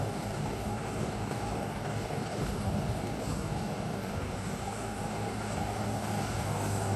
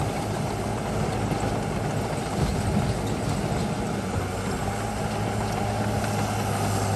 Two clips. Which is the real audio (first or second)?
second